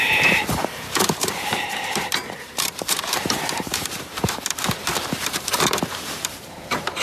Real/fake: fake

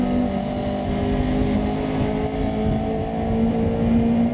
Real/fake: real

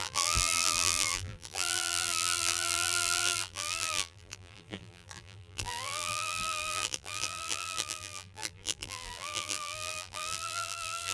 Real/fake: fake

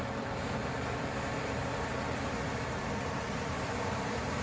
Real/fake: fake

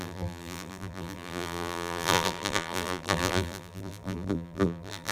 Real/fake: fake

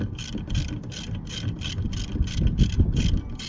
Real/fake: real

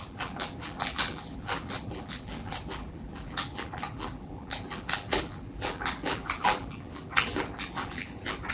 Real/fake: fake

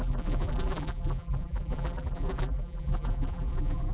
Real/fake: fake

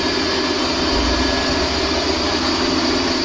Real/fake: fake